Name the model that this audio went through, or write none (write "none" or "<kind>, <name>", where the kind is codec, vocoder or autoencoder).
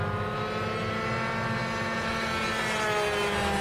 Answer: none